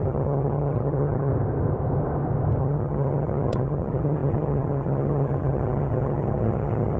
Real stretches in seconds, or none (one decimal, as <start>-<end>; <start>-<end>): 1.3-2.6